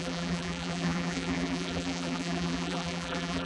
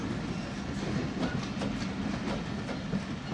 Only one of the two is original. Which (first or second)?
second